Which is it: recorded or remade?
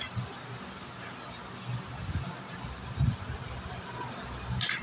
recorded